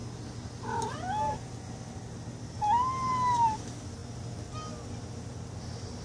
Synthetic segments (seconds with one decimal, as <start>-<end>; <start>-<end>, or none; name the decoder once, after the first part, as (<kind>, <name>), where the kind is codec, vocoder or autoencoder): none